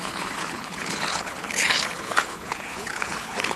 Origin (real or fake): fake